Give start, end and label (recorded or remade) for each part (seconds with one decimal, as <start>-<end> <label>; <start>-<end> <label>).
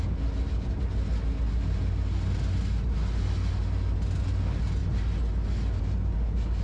0.0-6.6 recorded